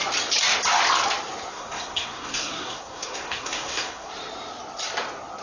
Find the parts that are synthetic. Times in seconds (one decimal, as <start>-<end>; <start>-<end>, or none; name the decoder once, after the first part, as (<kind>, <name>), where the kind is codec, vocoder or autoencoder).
1.5-4.1 (codec, SNAC)